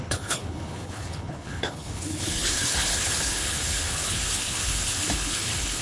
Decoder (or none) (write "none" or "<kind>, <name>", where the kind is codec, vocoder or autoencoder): codec, HILCodec